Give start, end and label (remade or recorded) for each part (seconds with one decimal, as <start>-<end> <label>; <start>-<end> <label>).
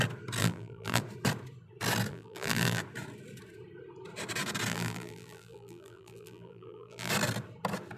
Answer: 0.0-0.4 recorded; 0.4-1.0 remade; 1.0-2.1 recorded; 2.1-2.8 remade; 2.8-4.7 recorded; 4.7-7.1 remade; 7.1-8.0 recorded